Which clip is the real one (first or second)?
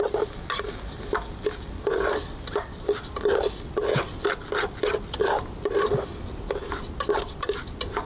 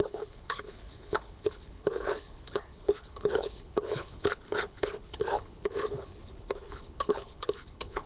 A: first